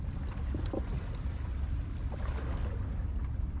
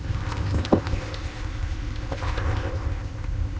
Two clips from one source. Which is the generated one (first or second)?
second